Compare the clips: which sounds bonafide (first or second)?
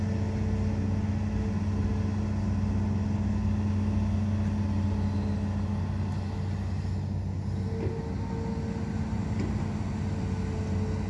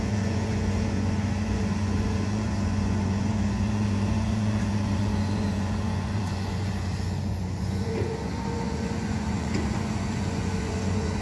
first